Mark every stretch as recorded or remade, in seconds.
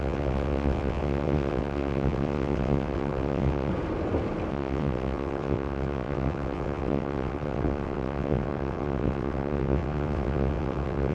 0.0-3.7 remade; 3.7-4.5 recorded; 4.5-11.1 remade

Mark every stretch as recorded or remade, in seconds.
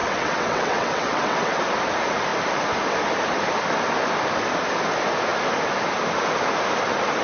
0.0-1.6 remade; 1.6-7.2 recorded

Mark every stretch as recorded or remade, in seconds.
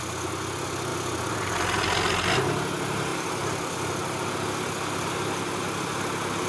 0.0-6.5 recorded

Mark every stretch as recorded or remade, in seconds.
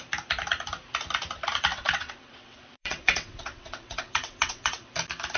0.0-1.7 recorded; 1.7-4.9 remade; 4.9-5.4 recorded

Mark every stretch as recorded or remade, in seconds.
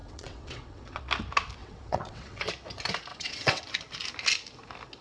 0.0-1.0 remade; 1.0-1.6 recorded; 1.6-2.5 remade; 2.5-3.1 recorded; 3.1-3.6 remade; 3.6-5.0 recorded